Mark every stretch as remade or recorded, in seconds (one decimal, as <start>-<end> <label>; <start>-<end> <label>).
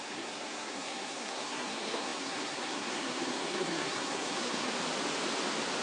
0.0-4.7 remade; 4.7-5.8 recorded